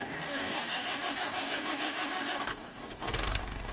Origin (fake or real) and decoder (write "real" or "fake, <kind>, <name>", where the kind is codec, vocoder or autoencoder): fake, codec, DAC